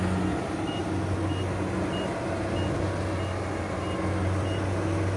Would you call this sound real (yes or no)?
yes